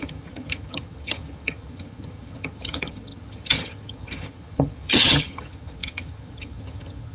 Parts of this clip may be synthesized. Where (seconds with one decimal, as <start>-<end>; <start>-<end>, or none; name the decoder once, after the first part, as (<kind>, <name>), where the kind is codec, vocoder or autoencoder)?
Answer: 0.0-7.1 (vocoder, HiFi-GAN)